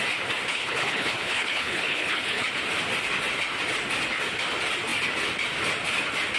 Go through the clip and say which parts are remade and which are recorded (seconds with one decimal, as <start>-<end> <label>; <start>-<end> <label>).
0.0-0.5 recorded; 0.5-2.4 remade; 2.4-6.4 recorded